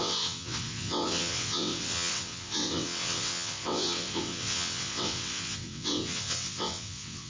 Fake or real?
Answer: fake